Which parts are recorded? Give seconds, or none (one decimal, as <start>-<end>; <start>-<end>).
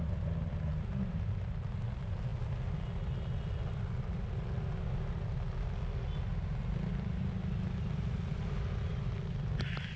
0.0-10.0